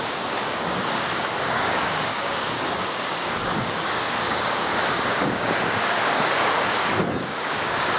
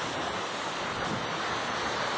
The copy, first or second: first